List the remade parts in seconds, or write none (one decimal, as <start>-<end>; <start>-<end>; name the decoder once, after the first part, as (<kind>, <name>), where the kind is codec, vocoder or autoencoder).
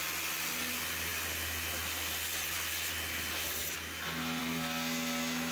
none